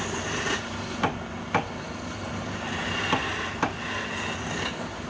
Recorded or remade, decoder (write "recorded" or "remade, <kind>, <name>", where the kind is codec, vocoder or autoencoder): recorded